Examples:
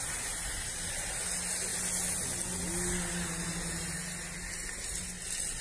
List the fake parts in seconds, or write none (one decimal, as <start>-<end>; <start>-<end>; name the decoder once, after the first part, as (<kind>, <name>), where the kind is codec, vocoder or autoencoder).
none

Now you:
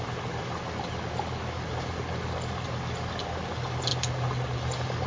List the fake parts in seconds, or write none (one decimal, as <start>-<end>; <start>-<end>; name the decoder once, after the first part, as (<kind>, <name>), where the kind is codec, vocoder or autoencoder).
none

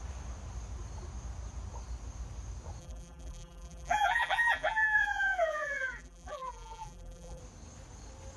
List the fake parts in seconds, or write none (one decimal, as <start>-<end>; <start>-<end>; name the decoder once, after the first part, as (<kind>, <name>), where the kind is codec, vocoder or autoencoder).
2.8-7.4 (vocoder, BigVGAN v2)